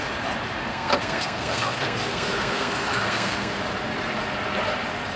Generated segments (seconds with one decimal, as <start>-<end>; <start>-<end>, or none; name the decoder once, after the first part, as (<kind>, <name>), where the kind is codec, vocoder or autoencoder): 0.7-3.6 (codec, SNAC)